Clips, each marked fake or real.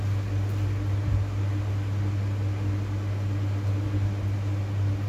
real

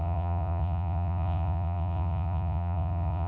fake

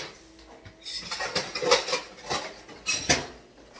real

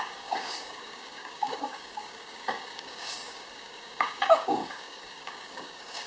fake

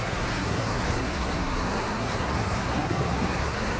fake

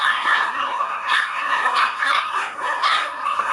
fake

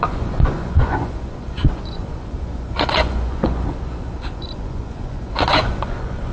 fake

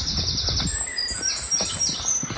real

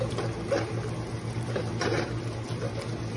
real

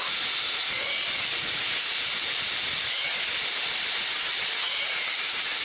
real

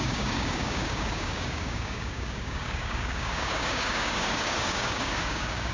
fake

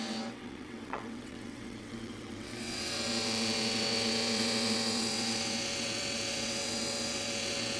fake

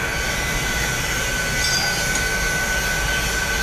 real